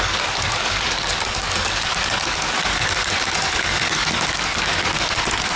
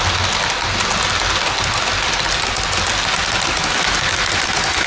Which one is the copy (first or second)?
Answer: first